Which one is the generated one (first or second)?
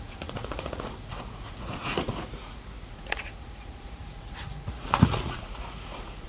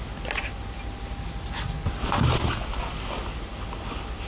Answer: first